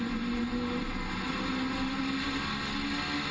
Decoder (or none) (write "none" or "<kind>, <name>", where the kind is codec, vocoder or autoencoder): none